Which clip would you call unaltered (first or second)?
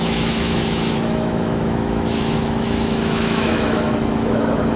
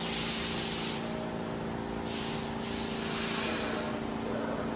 second